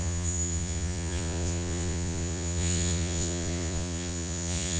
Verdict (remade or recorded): remade